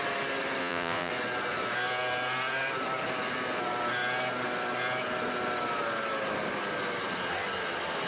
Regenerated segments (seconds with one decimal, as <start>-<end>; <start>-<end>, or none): 0.6-1.1